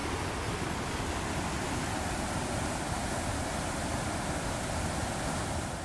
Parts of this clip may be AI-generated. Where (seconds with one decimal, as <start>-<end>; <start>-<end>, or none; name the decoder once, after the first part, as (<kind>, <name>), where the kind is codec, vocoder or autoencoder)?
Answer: none

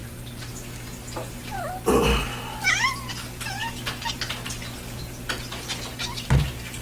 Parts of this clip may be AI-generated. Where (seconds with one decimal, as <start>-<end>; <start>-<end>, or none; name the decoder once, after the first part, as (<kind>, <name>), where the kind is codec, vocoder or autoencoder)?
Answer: 0.0-0.5 (vocoder, BigVGAN v2)

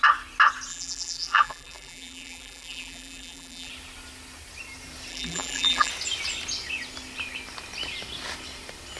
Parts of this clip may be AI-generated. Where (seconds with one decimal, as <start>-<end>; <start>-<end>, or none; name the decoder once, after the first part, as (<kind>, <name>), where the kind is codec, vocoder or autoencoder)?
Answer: 0.7-3.7 (vocoder, BigVGAN v2); 5.1-5.9

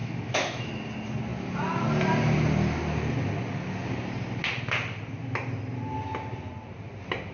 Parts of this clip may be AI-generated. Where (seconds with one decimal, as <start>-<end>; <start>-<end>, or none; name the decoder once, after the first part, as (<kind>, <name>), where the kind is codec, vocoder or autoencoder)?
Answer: 0.0-0.7 (autoencoder, DAC-VAE)

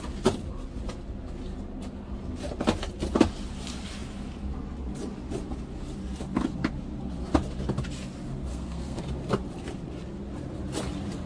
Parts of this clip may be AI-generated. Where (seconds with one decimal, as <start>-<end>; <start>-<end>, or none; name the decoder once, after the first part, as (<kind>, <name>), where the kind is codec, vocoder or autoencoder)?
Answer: 8.5-9.0 (codec, SNAC)

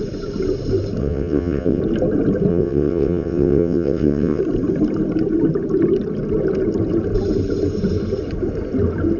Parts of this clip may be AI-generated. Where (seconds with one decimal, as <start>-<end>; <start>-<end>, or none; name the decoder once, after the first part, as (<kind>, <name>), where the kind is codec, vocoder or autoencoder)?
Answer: 1.0-1.8 (vocoder, WaveNeXt); 2.5-4.4

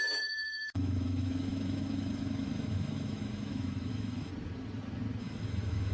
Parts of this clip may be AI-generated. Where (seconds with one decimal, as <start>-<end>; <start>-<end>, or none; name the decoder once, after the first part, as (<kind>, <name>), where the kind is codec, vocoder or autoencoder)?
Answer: 0.0-4.3 (autoencoder, DAC-VAE); 5.2-5.9

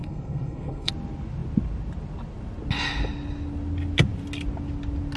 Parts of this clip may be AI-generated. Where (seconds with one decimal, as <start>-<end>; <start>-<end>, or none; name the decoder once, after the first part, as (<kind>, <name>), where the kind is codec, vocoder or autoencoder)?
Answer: 0.0-0.9 (codec, SNAC)